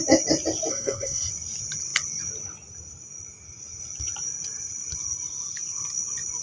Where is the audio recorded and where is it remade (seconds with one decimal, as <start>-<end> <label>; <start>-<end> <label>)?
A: 0.0-0.7 recorded; 0.7-1.3 remade; 1.3-6.4 recorded